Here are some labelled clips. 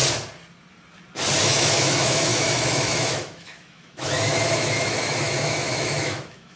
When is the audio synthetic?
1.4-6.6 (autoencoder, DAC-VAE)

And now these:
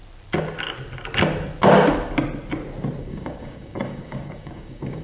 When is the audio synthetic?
3.0-5.0 (codec, DAC)

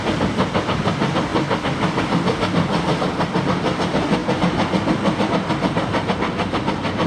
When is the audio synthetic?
none